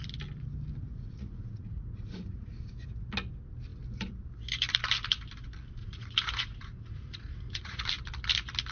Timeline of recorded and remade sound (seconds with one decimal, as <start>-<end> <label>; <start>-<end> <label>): 0.0-0.8 recorded; 0.8-2.5 remade; 2.5-5.8 recorded; 5.8-7.8 remade; 7.8-8.7 recorded